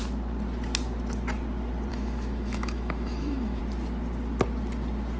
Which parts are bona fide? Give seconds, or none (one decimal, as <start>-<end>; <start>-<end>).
0.0-1.9; 3.6-5.2